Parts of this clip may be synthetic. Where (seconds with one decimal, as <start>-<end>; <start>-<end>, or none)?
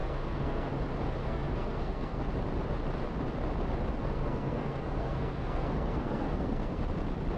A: 0.0-0.7; 1.2-2.3; 4.0-6.8